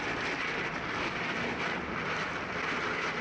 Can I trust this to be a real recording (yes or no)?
yes